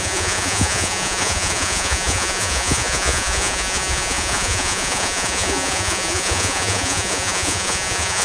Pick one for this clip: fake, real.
fake